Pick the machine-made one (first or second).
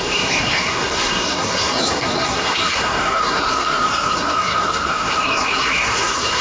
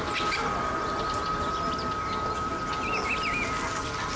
first